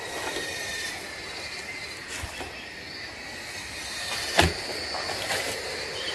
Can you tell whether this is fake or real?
real